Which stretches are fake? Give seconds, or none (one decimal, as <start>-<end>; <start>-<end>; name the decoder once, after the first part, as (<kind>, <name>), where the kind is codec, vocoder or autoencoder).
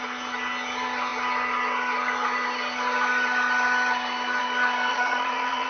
4.9-5.7 (vocoder, Vocos)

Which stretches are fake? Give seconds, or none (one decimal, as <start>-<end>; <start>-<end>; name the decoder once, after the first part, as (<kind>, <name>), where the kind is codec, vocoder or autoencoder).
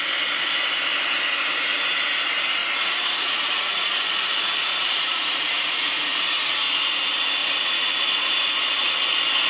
2.6-6.6 (vocoder, Vocos); 7.4-8.9